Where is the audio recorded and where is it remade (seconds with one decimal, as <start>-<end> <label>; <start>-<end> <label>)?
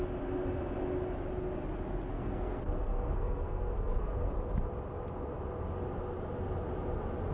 0.0-2.1 recorded; 2.1-4.3 remade; 4.3-7.3 recorded